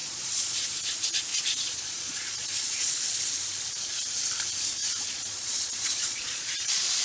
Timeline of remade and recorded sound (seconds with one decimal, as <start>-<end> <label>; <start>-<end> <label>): 0.0-0.5 remade; 0.5-1.3 recorded; 1.3-2.9 remade; 2.9-4.8 recorded; 4.8-7.0 remade